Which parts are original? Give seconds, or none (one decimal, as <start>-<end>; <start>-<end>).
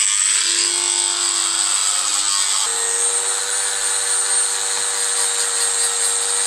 0.0-6.5